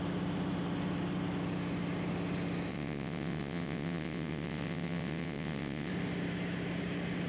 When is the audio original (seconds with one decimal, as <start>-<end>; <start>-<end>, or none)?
0.0-2.7; 5.9-7.3